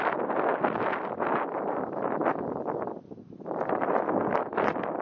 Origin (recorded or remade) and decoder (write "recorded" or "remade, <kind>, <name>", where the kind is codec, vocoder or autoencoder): recorded